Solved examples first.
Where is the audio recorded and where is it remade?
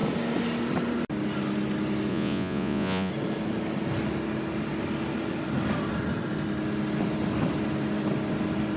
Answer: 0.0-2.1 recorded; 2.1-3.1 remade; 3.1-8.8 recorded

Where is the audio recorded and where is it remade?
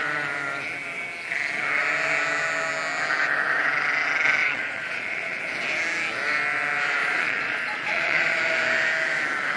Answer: 0.0-4.4 recorded; 4.4-5.4 remade; 5.4-7.0 recorded; 7.0-8.4 remade; 8.4-9.6 recorded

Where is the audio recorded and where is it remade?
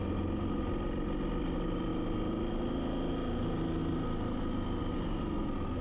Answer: 0.0-5.8 recorded